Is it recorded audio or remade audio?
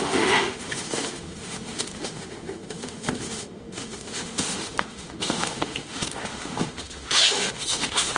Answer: remade